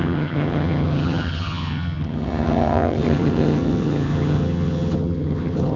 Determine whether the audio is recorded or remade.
remade